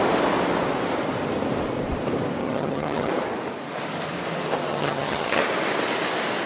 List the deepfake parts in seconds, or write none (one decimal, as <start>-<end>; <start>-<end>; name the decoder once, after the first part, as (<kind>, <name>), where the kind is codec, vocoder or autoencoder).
2.4-3.1 (vocoder, HiFi-GAN); 4.7-5.4